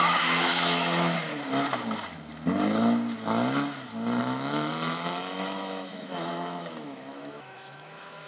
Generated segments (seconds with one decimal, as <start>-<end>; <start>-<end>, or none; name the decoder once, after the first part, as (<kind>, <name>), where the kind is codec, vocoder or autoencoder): 0.0-1.3 (autoencoder, DAC-VAE); 4.2-8.3